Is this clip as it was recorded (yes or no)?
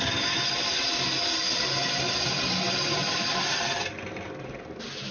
yes